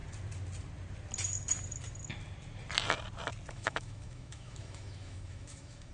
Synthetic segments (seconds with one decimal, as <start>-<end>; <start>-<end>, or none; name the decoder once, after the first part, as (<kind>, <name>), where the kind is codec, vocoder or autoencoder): 3.5-5.9 (autoencoder, DAC-VAE)